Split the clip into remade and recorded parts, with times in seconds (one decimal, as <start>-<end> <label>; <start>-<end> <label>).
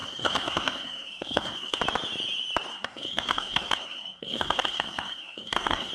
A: 0.0-1.8 remade; 1.8-2.7 recorded; 2.7-5.9 remade